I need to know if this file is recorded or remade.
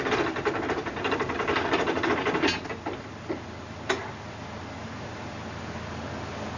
recorded